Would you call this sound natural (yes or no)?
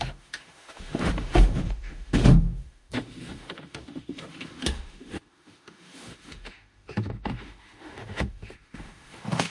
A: no